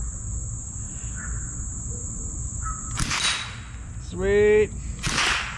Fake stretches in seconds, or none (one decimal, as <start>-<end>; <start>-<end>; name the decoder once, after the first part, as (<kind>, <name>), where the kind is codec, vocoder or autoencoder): none